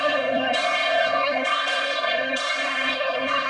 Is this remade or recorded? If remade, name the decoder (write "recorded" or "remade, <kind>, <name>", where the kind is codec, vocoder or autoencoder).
remade, codec, SNAC